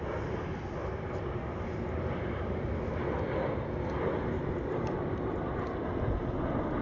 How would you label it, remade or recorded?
recorded